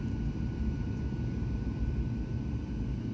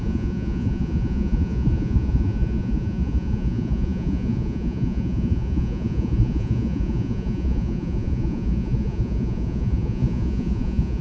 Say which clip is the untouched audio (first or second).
first